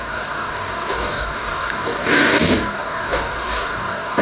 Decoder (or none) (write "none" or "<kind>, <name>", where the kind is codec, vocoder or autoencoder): codec, DAC